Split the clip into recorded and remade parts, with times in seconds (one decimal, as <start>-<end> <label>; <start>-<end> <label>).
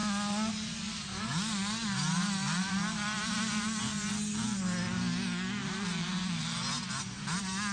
0.0-5.6 recorded; 5.6-6.4 remade; 6.4-7.7 recorded